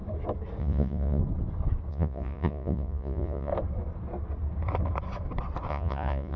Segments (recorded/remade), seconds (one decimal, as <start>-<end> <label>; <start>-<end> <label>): 0.0-0.6 recorded; 0.6-1.2 remade; 1.2-1.9 recorded; 1.9-3.5 remade; 3.5-5.7 recorded; 5.7-6.4 remade